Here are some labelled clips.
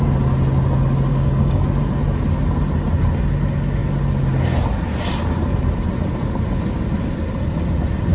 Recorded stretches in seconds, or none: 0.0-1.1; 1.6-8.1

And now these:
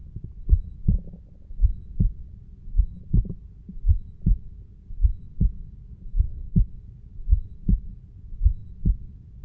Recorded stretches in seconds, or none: 0.0-6.1; 6.7-9.4

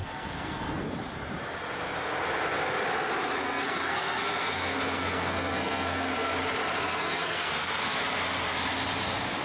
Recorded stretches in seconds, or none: 0.9-3.4; 6.1-6.9; 8.0-9.4